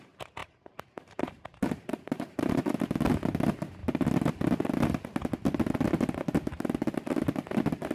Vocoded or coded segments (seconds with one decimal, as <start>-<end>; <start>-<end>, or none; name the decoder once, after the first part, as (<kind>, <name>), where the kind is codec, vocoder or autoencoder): 0.4-2.6 (vocoder, BigVGAN v2)